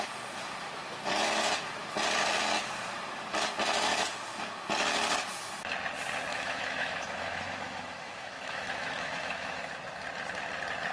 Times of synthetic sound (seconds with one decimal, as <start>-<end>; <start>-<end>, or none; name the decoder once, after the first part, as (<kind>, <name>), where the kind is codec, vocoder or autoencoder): 6.3-9.7 (autoencoder, DAC-VAE)